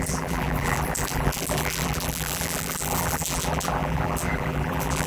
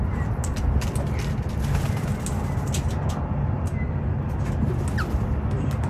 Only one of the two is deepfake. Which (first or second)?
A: first